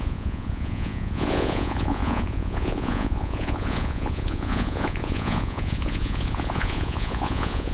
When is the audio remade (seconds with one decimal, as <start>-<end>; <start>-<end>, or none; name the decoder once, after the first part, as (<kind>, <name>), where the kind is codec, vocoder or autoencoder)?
0.0-7.7 (vocoder, Vocos)